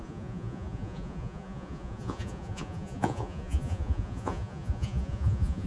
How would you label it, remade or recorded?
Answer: remade